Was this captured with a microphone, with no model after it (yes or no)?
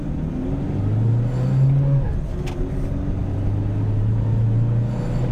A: yes